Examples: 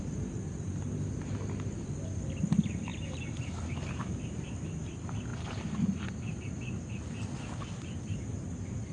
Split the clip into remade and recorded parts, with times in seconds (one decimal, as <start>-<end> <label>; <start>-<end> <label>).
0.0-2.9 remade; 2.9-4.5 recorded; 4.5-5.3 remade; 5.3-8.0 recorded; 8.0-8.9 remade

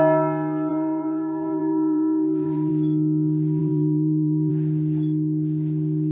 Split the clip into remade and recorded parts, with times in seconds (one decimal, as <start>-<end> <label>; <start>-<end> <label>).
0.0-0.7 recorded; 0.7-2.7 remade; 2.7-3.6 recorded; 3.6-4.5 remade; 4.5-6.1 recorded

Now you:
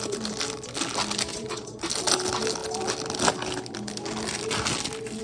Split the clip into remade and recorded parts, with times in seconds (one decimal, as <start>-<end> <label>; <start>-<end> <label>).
0.0-1.3 recorded; 1.3-1.8 remade; 1.8-5.2 recorded

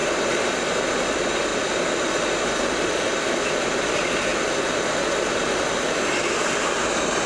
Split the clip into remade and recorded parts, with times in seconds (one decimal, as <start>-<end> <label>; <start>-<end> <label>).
0.0-4.3 remade; 4.3-5.0 recorded; 5.0-7.3 remade

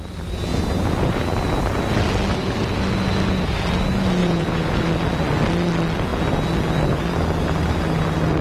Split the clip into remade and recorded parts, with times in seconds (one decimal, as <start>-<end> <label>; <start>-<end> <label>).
0.0-0.5 recorded; 0.5-1.6 remade; 1.6-4.2 recorded; 4.2-4.9 remade; 4.9-8.4 recorded

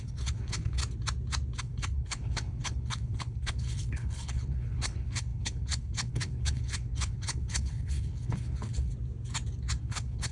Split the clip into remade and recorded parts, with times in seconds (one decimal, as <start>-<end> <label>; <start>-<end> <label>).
0.0-0.8 remade; 0.8-1.6 recorded; 1.6-8.9 remade; 8.9-9.8 recorded; 9.8-10.3 remade

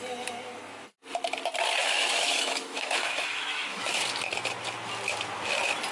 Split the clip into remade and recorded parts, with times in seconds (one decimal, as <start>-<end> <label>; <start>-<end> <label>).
0.0-1.8 recorded; 1.8-4.0 remade; 4.0-5.9 recorded